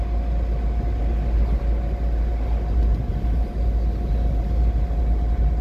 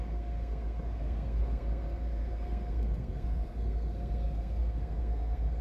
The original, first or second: first